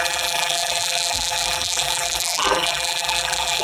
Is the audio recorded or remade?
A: remade